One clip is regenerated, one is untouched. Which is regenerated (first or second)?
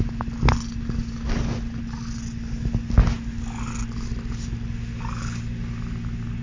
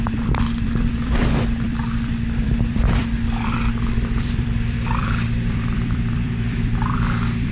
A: second